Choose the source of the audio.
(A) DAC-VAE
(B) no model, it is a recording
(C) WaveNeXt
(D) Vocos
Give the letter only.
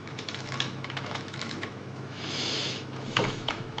A